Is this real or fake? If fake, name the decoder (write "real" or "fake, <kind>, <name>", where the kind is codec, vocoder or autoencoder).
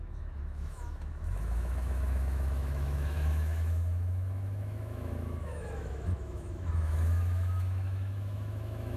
fake, autoencoder, DAC-VAE